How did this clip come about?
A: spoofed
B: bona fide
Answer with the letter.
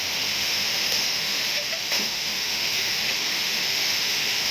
A